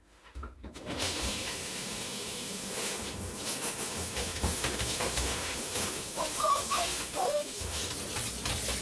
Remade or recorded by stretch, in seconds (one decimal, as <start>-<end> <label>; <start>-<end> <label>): 0.0-7.8 remade; 7.8-8.8 recorded